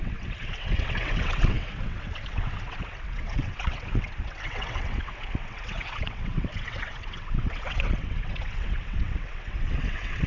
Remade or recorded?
remade